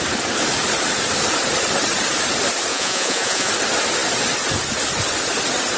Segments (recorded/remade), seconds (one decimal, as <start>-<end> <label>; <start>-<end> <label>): 0.0-2.7 recorded; 2.7-3.5 remade; 3.5-5.8 recorded